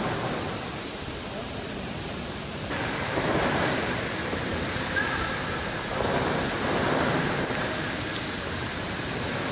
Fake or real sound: fake